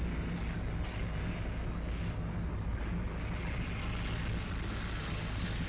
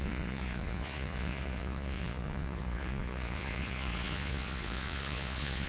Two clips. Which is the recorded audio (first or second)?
first